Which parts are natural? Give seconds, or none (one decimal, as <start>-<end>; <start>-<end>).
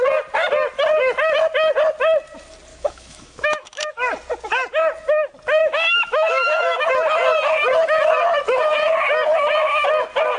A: 0.0-2.7; 3.9-5.6; 6.9-10.4